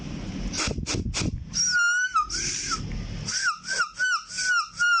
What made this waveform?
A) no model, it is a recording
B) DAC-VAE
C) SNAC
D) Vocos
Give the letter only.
A